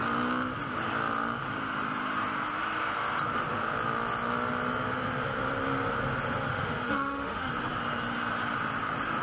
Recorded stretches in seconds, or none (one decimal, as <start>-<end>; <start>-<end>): 0.0-6.5; 7.5-9.2